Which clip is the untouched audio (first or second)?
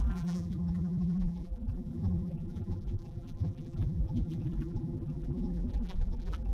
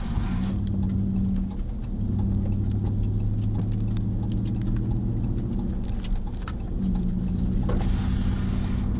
second